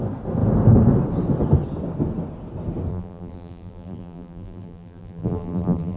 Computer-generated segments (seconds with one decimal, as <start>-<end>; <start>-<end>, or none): 2.9-6.0